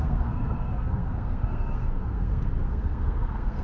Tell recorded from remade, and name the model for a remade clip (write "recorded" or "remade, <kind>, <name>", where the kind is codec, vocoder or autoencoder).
remade, codec, SNAC